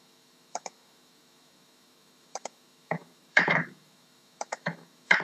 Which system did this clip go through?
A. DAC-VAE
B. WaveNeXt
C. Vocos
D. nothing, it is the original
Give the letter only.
A